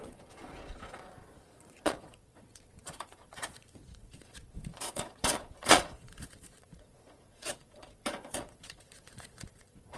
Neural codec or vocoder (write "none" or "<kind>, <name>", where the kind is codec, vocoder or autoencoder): vocoder, Vocos